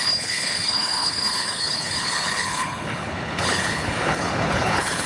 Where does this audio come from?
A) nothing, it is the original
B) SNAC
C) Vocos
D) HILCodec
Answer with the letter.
D